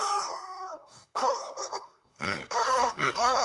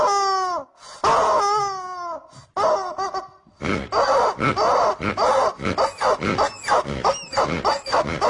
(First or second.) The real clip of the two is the second